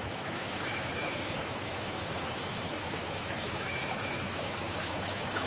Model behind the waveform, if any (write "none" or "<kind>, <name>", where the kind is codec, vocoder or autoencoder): autoencoder, DAC-VAE